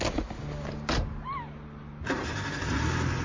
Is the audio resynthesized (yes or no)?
no